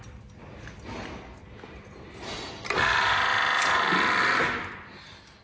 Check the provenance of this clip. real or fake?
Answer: real